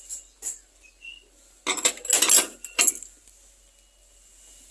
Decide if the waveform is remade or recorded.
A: recorded